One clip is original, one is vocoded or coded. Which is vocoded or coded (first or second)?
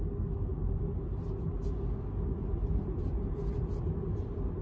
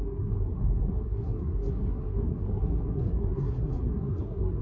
second